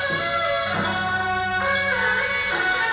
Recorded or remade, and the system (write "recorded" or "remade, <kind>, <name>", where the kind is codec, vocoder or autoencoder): recorded